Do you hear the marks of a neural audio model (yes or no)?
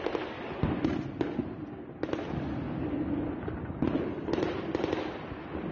no